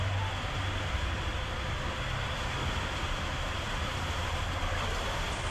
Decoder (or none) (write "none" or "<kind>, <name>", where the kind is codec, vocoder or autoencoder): none